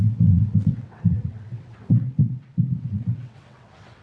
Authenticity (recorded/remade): remade